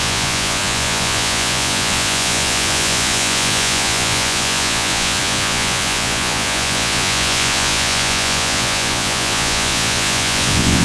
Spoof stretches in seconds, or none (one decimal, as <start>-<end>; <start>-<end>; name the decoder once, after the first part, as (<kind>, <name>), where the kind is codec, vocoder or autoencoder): 0.0-10.8 (vocoder, Vocos)